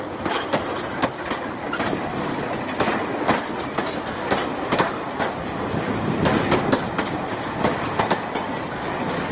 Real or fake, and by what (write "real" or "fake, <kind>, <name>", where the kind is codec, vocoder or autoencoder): fake, vocoder, BigVGAN v2